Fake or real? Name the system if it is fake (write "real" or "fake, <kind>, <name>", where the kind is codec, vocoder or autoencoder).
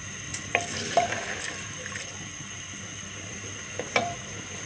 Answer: fake, vocoder, BigVGAN v2